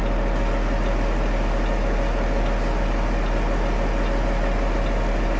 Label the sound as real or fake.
real